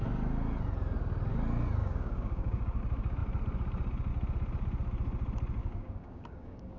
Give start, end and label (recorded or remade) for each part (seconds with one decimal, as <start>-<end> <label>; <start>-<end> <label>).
0.0-1.8 recorded; 1.8-2.8 remade; 2.8-5.6 recorded; 5.6-6.8 remade